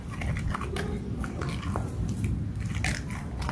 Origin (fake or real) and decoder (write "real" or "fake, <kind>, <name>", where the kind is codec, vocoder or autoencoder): real